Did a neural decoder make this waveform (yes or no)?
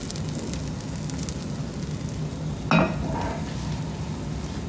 no